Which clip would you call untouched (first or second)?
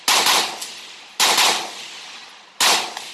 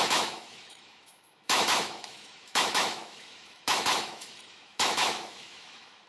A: first